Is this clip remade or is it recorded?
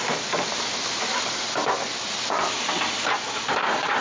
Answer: recorded